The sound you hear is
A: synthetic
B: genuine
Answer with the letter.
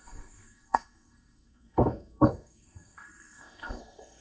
A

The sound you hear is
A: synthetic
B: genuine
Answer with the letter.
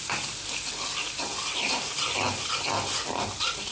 B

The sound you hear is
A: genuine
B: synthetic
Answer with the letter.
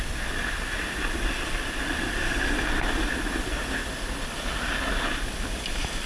A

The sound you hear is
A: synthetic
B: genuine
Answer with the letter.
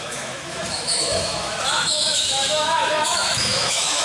A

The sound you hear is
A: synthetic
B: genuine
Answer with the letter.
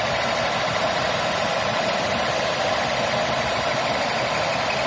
B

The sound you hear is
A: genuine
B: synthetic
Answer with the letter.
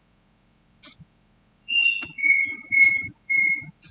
B